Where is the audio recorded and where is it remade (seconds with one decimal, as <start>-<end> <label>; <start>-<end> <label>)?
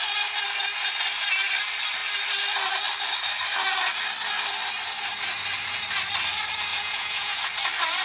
0.0-6.7 recorded; 6.7-7.4 remade; 7.4-8.0 recorded